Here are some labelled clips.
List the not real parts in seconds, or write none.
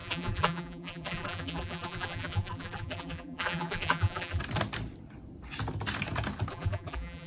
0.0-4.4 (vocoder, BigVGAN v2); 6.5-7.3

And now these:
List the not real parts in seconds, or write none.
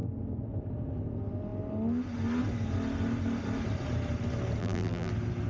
4.6-5.1 (vocoder, BigVGAN v2)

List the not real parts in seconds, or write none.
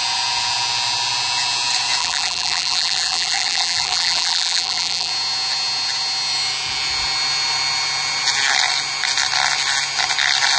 2.0-5.1 (vocoder, BigVGAN v2)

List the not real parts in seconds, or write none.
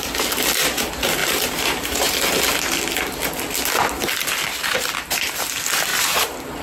1.2-2.1 (vocoder, BigVGAN v2); 5.9-6.6